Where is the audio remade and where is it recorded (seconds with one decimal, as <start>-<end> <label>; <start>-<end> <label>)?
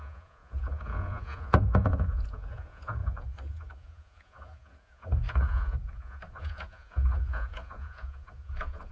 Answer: 0.0-8.9 remade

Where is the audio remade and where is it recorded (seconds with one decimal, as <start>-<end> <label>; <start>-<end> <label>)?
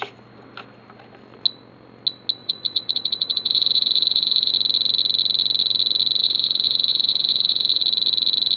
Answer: 0.0-2.4 recorded; 2.4-4.5 remade; 4.5-6.2 recorded; 6.2-7.8 remade; 7.8-8.6 recorded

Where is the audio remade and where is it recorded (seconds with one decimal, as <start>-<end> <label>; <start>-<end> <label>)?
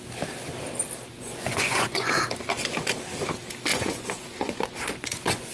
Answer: 0.0-1.1 recorded; 1.1-2.2 remade; 2.2-3.7 recorded; 3.7-5.5 remade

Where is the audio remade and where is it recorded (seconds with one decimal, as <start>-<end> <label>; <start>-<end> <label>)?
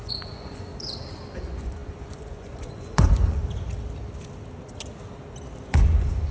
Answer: 0.0-0.7 remade; 0.7-1.4 recorded; 1.4-3.4 remade; 3.4-5.6 recorded; 5.6-6.3 remade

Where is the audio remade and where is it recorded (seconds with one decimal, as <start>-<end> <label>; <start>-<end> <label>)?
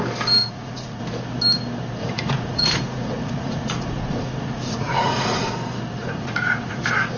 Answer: 0.0-0.4 recorded; 0.4-1.0 remade; 1.0-2.0 recorded; 2.0-5.5 remade; 5.5-6.0 recorded; 6.0-6.8 remade; 6.8-7.2 recorded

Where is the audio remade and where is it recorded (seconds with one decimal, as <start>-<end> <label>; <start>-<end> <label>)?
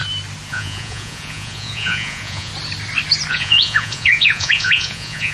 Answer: 0.0-0.5 recorded; 0.5-2.5 remade; 2.5-3.3 recorded; 3.3-5.3 remade